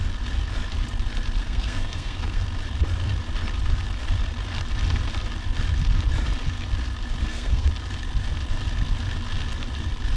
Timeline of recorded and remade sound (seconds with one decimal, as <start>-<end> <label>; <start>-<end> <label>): 0.0-1.4 recorded; 1.4-2.4 remade; 2.4-7.2 recorded; 7.2-7.7 remade; 7.7-10.2 recorded